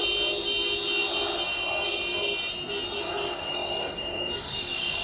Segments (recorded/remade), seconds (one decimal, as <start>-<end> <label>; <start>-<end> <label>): 0.0-3.0 recorded; 3.0-5.0 remade